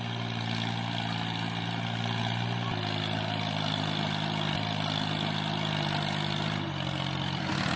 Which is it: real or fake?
real